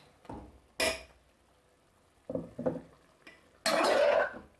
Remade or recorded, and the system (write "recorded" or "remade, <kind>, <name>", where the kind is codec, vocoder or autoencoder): recorded